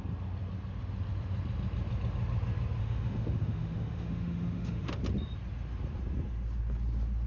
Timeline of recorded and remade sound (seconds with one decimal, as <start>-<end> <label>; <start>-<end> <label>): 0.0-2.8 recorded; 2.8-5.0 remade; 5.0-7.3 recorded